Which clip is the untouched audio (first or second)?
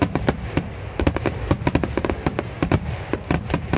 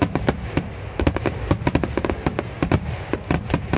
second